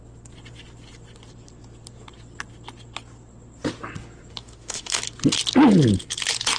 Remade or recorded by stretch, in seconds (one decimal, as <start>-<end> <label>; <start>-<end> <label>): 0.0-4.4 recorded; 4.4-5.0 remade; 5.0-6.6 recorded